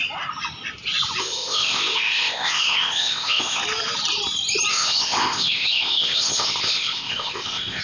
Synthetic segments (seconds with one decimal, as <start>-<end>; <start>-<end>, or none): 1.2-3.6; 4.7-7.8